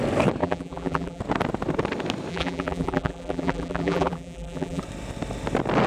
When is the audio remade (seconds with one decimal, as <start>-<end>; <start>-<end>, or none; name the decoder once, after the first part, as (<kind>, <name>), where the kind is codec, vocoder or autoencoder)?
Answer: 0.4-1.2 (vocoder, BigVGAN v2); 2.3-4.8